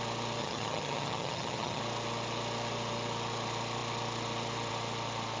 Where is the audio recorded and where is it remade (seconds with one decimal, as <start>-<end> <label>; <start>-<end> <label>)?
0.0-0.4 recorded; 0.4-1.8 remade; 1.8-5.4 recorded